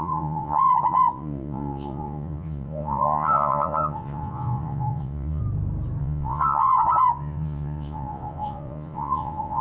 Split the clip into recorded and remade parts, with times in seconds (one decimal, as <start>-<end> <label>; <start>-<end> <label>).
0.0-5.4 remade; 5.4-6.0 recorded; 6.0-9.6 remade